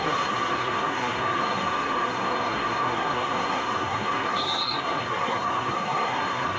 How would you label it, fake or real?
fake